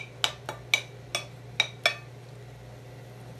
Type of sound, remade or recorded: recorded